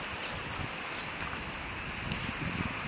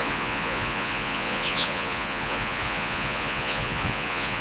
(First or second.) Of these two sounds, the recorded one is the first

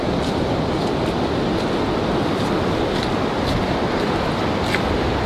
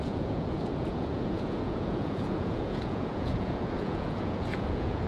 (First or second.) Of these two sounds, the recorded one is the first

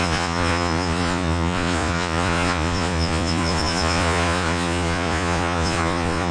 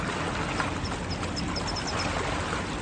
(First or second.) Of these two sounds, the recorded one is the second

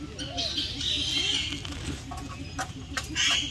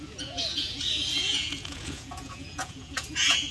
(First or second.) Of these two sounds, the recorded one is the first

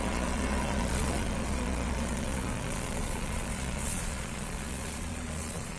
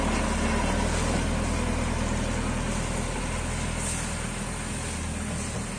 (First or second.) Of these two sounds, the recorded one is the second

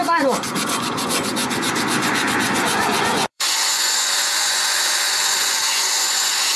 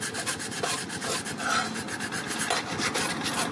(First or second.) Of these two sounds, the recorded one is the second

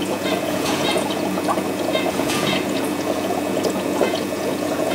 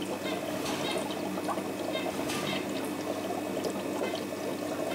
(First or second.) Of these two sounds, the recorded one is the second